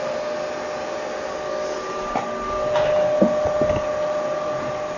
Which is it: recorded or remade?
recorded